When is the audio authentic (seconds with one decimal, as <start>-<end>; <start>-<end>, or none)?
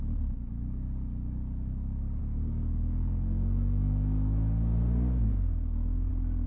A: 0.0-2.2; 6.1-6.5